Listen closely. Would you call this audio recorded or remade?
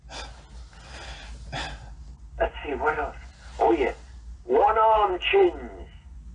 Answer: recorded